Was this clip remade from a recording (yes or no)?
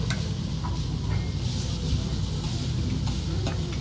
no